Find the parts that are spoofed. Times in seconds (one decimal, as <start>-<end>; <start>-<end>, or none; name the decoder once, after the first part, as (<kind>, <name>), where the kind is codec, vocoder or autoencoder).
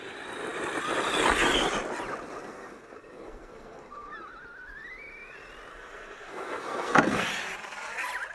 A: 2.5-4.1 (codec, SNAC); 5.7-7.3